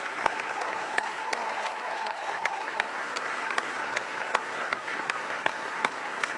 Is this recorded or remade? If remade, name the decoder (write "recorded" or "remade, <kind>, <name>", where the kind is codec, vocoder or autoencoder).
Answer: remade, codec, SNAC